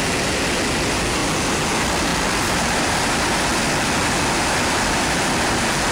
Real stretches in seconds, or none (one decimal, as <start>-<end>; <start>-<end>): 0.0-2.1; 3.3-5.9